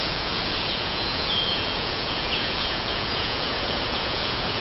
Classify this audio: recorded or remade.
remade